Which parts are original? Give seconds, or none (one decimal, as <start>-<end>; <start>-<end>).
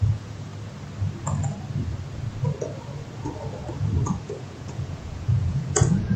0.5-4.2